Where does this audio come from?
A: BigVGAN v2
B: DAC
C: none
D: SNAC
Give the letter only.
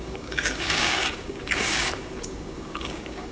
B